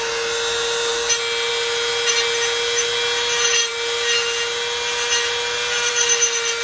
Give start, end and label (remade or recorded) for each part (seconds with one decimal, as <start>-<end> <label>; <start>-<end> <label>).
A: 0.0-6.6 recorded